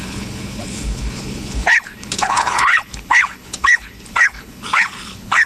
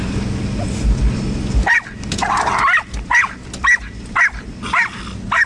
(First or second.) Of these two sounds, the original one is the second